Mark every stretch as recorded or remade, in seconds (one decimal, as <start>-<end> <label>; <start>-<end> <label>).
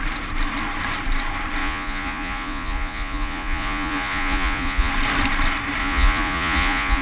0.0-1.6 recorded; 1.6-4.9 remade; 4.9-5.8 recorded; 5.8-7.0 remade